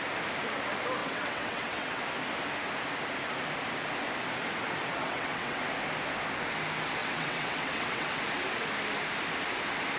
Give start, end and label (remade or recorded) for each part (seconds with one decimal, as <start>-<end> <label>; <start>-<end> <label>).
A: 0.0-1.0 recorded; 1.0-2.0 remade; 2.0-5.0 recorded; 5.0-5.6 remade; 5.6-7.0 recorded; 7.0-8.2 remade; 8.2-10.0 recorded